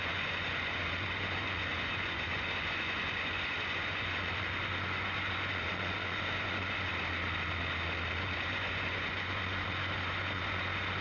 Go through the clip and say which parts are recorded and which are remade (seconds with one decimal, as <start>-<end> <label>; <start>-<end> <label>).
0.0-6.9 remade; 6.9-8.2 recorded; 8.2-11.0 remade